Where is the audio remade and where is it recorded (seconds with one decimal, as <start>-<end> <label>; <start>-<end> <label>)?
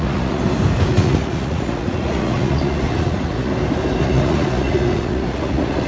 0.0-0.4 remade; 0.4-0.9 recorded; 0.9-3.5 remade; 3.5-4.0 recorded; 4.0-5.9 remade